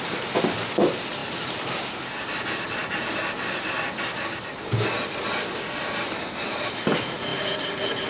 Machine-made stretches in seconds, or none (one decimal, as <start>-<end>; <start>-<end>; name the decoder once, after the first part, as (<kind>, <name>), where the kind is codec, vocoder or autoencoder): none